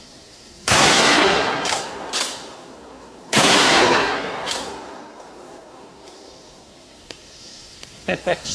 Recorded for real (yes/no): no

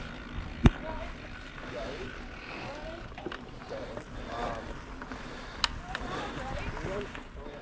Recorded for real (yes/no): yes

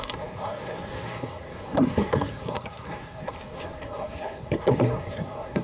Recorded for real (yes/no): no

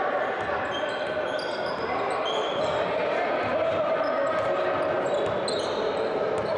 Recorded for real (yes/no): yes